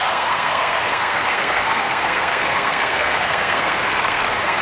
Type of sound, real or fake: fake